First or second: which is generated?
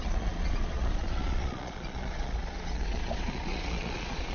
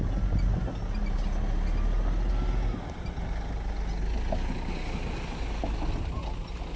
first